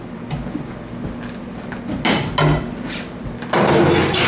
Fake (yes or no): no